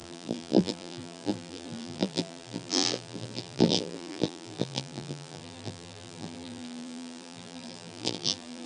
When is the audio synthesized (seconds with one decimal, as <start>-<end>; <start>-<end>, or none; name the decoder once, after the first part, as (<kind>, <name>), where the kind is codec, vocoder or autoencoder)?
0.0-8.7 (vocoder, BigVGAN v2)